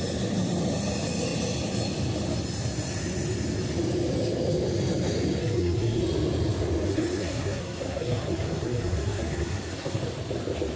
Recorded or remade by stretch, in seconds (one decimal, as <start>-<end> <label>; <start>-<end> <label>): 0.0-5.4 recorded; 5.4-6.0 remade; 6.0-6.9 recorded; 6.9-10.0 remade; 10.0-10.8 recorded